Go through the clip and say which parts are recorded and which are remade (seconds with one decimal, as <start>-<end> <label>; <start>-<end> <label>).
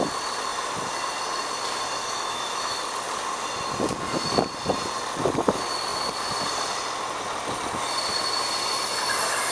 0.0-2.0 recorded; 2.0-2.8 remade; 2.8-9.5 recorded